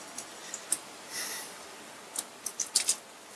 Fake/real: real